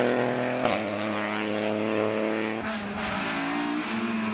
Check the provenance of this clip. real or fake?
real